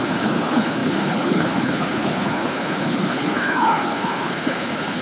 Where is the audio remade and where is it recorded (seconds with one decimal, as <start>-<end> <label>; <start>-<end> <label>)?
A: 0.0-5.0 remade

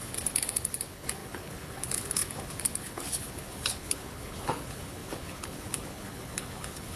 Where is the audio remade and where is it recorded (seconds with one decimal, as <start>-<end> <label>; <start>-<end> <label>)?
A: 0.0-7.0 remade

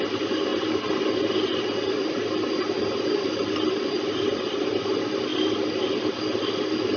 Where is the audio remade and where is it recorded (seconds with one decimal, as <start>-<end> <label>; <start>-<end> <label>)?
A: 0.0-7.0 recorded

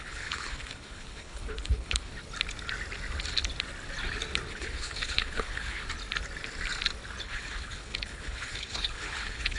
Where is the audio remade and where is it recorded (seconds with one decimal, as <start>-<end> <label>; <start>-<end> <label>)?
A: 0.0-2.1 remade; 2.1-4.5 recorded; 4.5-5.8 remade; 5.8-7.2 recorded; 7.2-9.6 remade

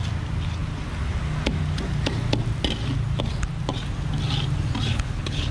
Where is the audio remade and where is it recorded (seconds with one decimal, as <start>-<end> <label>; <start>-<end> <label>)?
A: 0.0-4.9 recorded; 4.9-5.5 remade